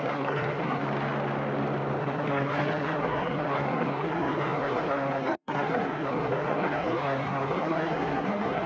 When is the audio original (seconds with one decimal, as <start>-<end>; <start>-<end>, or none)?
0.8-2.0